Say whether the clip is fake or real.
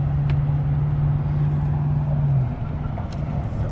real